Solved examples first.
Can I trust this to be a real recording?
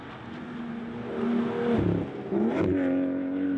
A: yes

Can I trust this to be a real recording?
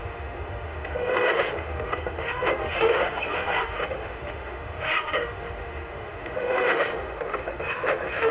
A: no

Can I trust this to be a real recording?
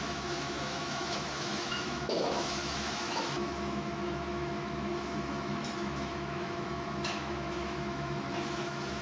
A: no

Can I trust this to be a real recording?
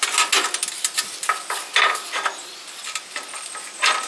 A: yes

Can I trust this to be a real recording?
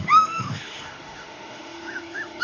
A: no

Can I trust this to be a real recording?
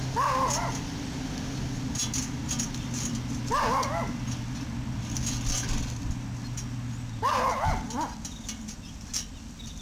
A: yes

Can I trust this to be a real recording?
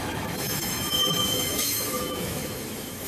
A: no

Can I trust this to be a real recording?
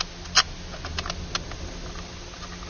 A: yes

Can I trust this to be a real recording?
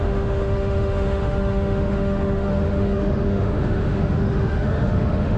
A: no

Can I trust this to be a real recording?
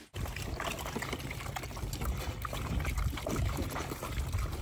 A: yes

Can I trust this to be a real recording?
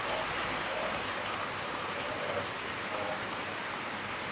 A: yes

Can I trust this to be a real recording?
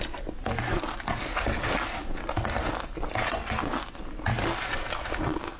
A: yes